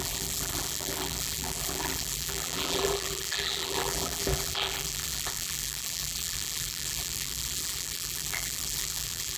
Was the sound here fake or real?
fake